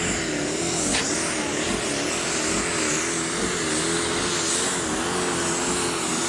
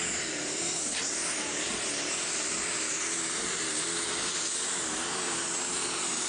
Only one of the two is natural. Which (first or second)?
first